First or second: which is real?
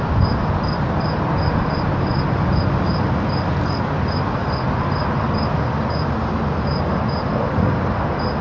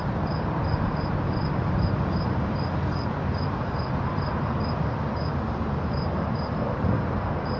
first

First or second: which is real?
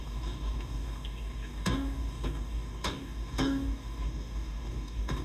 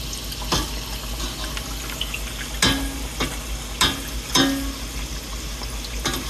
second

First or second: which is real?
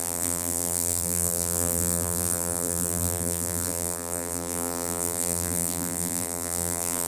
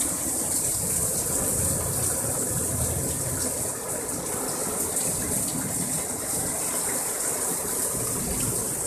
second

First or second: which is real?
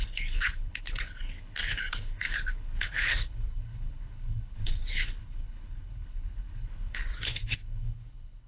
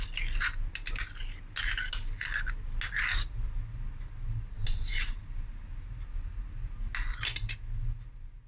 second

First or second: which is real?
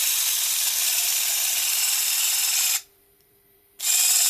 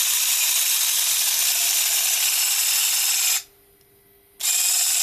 second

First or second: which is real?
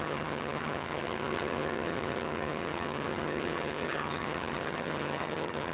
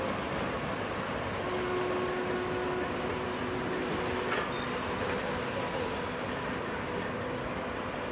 second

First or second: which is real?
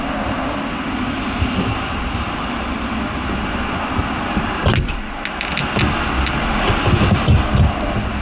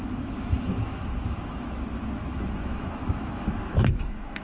first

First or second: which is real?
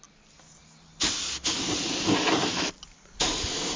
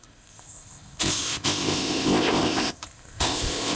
first